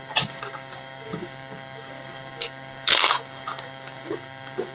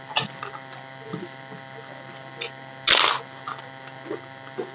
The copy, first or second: first